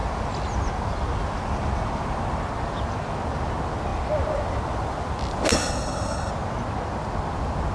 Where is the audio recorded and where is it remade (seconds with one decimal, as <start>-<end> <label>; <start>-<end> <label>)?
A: 0.0-5.5 recorded; 5.5-6.3 remade; 6.3-7.7 recorded